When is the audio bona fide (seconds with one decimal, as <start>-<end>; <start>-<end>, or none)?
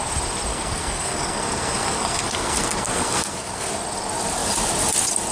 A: 0.0-0.5; 3.7-5.3